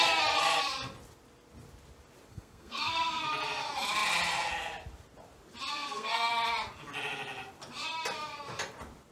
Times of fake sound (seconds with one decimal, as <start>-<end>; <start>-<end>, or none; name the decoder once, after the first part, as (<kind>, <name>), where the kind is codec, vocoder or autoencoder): 2.3-3.2 (codec, SNAC); 5.7-6.3

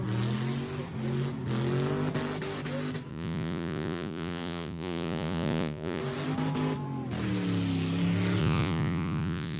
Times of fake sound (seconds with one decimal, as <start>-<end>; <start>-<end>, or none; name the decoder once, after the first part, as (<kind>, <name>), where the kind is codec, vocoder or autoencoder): 3.1-6.0 (vocoder, Vocos); 8.4-9.6